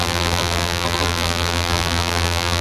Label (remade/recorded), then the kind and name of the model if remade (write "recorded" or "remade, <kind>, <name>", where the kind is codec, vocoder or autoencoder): remade, vocoder, BigVGAN v2